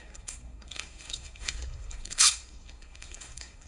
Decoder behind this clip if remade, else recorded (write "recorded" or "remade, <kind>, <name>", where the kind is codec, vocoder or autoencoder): remade, codec, SNAC